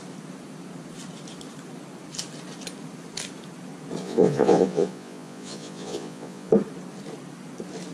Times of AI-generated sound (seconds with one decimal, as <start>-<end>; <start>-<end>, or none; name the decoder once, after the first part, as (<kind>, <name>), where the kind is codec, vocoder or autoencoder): 4.0-6.5 (vocoder, Vocos)

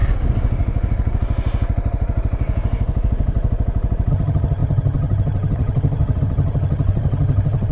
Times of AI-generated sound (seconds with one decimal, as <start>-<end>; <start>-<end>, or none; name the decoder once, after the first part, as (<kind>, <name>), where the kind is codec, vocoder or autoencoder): 4.1-7.7 (vocoder, HiFi-GAN)

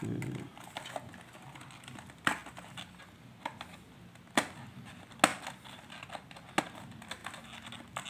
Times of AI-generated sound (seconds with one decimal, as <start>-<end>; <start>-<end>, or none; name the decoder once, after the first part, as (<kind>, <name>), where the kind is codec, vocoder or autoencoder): 2.4-3.0 (vocoder, BigVGAN v2)

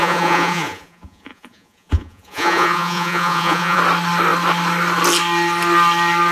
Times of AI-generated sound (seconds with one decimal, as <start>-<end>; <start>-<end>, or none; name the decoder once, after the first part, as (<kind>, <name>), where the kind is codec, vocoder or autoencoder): 0.0-3.8 (vocoder, Vocos)

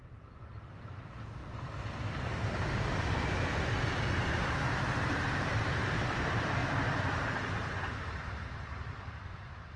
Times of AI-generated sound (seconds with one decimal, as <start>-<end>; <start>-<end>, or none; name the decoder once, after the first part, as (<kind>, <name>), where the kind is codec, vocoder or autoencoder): 0.0-1.4 (vocoder, BigVGAN v2); 2.2-6.6; 8.0-9.8